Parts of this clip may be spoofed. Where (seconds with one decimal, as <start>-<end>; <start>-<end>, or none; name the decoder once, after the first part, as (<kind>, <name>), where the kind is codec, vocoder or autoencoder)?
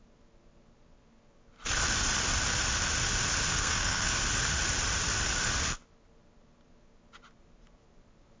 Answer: 3.5-4.1 (codec, SNAC)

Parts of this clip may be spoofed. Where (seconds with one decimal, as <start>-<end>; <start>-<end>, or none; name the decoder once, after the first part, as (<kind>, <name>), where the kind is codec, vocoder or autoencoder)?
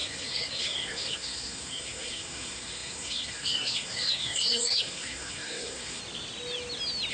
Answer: 0.0-6.0 (codec, SNAC)